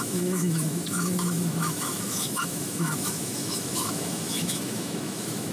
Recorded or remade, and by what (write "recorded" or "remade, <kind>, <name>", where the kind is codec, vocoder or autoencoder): remade, autoencoder, DAC-VAE